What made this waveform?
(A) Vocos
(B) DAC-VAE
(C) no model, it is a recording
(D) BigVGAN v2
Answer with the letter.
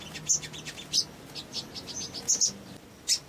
C